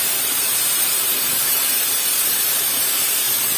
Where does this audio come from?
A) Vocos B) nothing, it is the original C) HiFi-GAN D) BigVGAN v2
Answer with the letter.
D